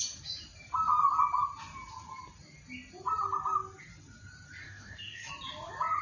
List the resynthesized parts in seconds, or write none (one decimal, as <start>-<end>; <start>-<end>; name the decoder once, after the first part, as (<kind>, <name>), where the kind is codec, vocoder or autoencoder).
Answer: 4.6-5.3 (codec, DAC)